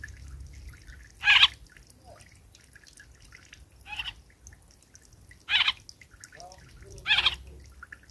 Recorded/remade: recorded